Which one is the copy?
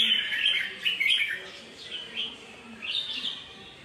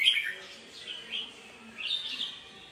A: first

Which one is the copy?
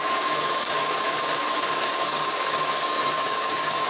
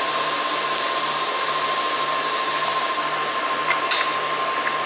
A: first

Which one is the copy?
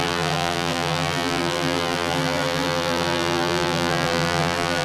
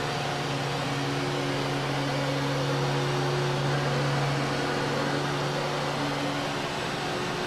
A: first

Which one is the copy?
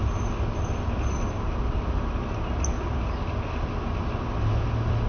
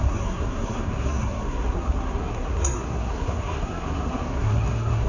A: second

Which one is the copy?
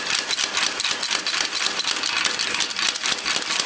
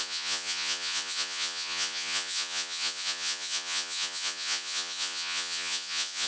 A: second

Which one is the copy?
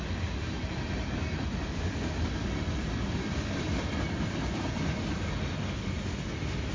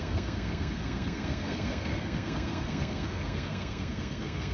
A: second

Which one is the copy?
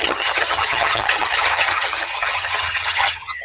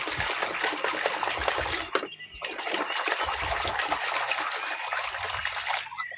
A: first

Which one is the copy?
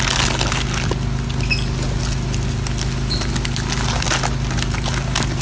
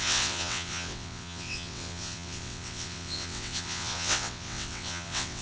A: second